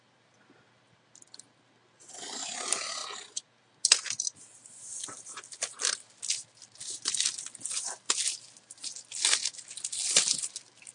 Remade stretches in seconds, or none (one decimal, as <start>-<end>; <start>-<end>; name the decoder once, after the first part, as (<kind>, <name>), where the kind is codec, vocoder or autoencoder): none